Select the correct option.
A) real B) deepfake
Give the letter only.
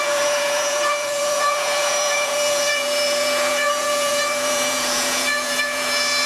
B